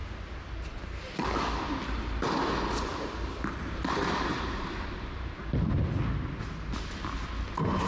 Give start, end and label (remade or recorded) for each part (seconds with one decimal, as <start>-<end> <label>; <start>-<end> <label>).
0.0-2.9 recorded; 2.9-5.4 remade; 5.4-7.9 recorded